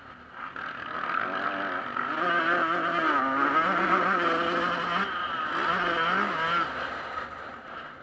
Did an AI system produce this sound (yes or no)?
no